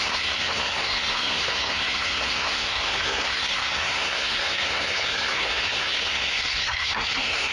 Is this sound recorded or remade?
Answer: remade